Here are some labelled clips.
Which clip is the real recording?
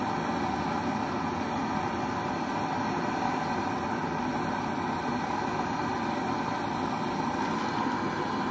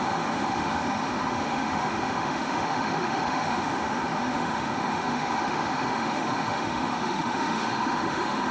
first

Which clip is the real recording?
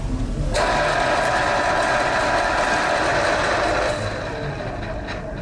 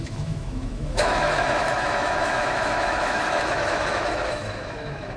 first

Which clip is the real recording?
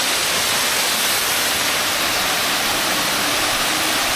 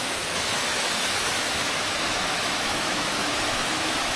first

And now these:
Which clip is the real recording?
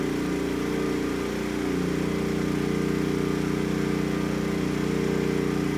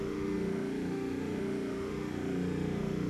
first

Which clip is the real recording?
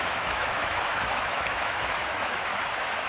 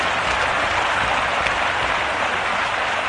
second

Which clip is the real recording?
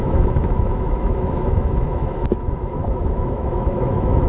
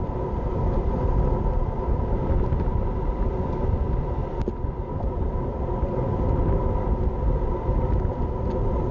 second